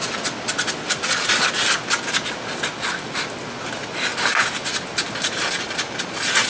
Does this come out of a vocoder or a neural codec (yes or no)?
no